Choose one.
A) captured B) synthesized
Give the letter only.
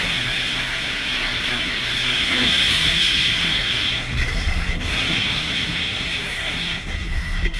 B